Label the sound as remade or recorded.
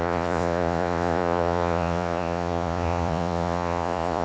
remade